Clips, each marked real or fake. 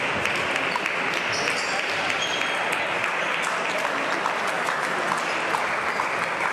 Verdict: real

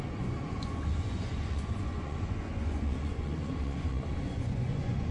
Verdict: fake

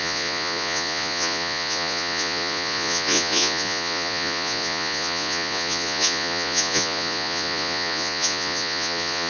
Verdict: fake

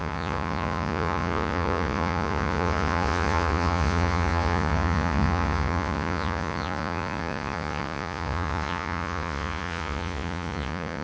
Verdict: fake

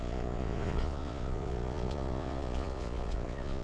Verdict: fake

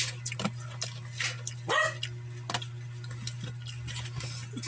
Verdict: real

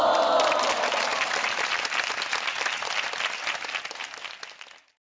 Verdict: real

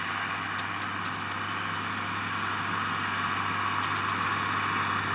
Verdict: real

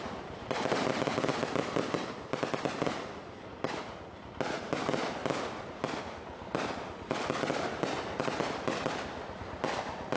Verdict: real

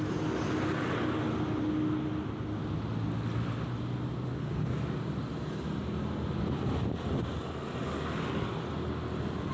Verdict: real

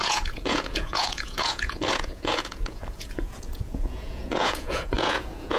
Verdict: fake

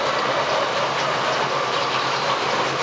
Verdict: real